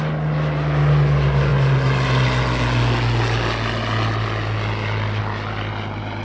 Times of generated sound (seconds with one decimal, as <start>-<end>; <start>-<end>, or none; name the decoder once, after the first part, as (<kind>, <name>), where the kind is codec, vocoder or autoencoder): none